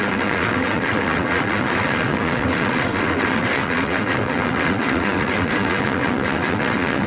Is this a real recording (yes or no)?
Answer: no